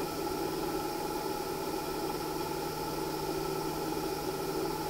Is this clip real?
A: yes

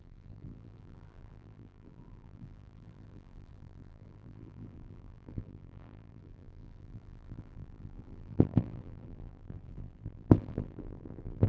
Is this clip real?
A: no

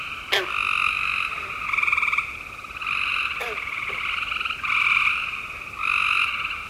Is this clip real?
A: yes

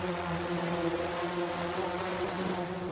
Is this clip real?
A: no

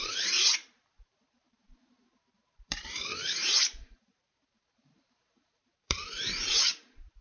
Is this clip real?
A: no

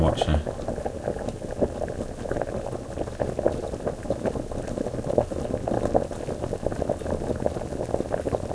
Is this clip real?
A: yes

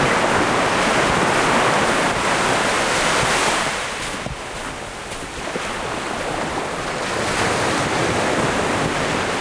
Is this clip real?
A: yes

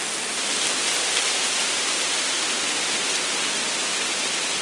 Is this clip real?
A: yes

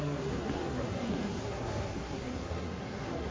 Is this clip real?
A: no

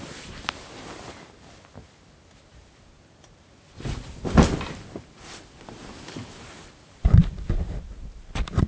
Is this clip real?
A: yes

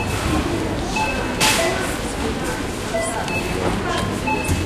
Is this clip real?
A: yes